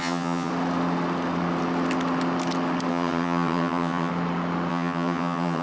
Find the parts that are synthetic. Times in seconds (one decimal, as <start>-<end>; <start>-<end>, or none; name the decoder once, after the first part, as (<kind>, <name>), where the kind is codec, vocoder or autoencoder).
0.0-0.5 (vocoder, HiFi-GAN); 2.9-4.1; 4.7-5.6